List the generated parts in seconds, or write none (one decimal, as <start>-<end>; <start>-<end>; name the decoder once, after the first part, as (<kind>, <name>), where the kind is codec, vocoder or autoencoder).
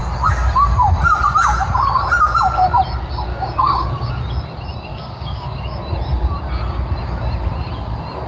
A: 3.3-4.1 (codec, DAC); 4.9-5.6